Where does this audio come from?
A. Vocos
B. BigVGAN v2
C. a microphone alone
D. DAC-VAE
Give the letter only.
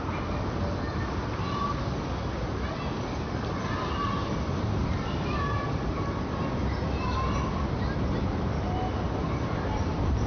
C